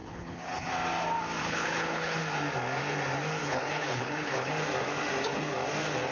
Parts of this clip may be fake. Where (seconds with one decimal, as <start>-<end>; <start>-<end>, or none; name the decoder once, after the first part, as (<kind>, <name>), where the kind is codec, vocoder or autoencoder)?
0.0-0.7 (codec, HILCodec); 1.4-2.2; 3.4-4.5